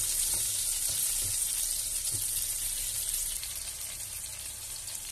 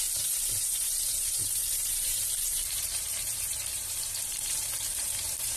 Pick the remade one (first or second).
second